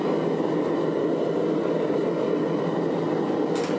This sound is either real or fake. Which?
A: real